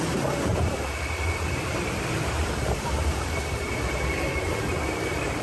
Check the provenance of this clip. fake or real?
fake